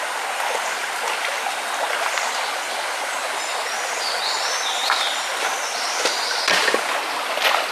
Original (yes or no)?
yes